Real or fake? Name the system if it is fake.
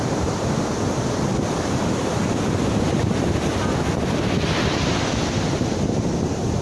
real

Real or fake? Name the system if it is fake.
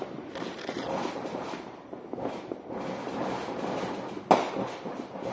real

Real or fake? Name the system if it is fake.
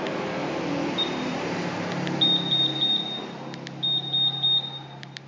real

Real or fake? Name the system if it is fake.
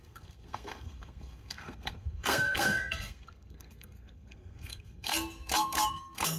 fake, codec, SNAC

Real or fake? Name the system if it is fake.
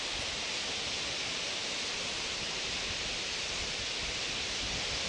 real